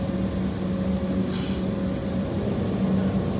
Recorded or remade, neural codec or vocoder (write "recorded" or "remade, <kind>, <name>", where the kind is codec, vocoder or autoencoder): recorded